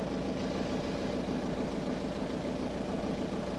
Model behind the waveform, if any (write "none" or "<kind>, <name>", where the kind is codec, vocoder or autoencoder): none